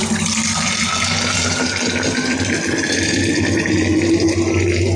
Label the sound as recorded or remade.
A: recorded